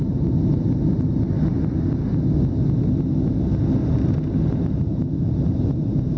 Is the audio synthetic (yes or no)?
no